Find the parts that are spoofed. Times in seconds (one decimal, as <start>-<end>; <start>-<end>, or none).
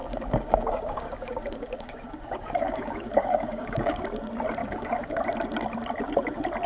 0.0-4.0; 4.6-5.2